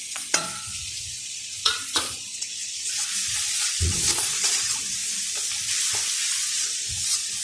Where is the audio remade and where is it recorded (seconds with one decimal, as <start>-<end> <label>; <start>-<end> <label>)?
0.0-5.0 remade; 5.0-6.5 recorded; 6.5-7.4 remade